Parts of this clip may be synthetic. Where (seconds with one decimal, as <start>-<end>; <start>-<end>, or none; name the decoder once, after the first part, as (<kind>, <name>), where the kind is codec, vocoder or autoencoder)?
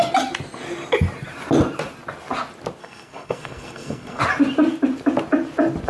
2.8-4.2 (codec, SNAC)